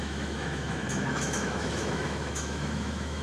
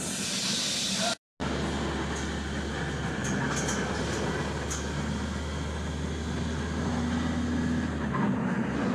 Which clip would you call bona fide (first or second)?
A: second